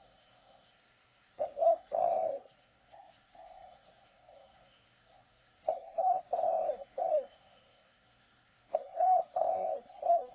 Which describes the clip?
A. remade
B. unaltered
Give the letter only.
A